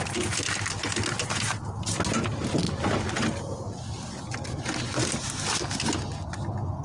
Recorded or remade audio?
recorded